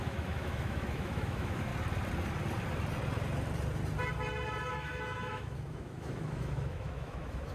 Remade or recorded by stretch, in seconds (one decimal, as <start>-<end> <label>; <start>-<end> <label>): 0.0-1.7 remade; 1.7-4.7 recorded; 4.7-7.5 remade